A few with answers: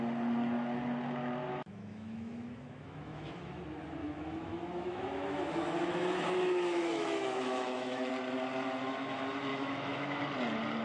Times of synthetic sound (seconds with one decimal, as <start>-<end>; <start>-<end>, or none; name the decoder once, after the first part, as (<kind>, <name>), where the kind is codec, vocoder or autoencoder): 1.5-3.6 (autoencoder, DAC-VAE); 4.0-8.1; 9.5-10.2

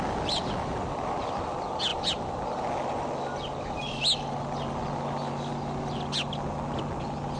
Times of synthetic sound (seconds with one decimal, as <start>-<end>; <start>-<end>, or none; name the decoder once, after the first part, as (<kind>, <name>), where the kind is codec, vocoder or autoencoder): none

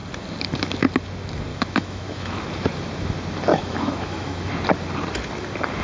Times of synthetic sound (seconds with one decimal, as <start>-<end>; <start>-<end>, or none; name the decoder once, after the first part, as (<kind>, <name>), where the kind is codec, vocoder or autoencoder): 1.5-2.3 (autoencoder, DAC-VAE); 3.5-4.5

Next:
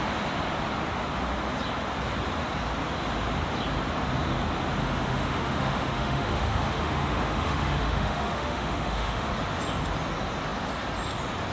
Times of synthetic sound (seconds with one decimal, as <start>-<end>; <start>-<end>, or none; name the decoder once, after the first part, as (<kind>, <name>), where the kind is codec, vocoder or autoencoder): 4.8-9.3 (autoencoder, DAC-VAE)

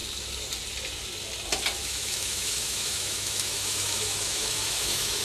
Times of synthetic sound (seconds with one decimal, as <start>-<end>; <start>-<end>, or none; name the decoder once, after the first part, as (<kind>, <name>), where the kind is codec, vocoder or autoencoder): 1.8-5.2 (autoencoder, DAC-VAE)